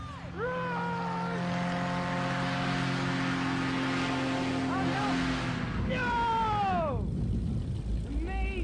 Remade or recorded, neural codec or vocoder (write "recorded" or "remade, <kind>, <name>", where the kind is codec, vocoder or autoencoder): recorded